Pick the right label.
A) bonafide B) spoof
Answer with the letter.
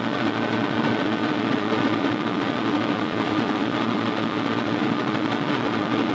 B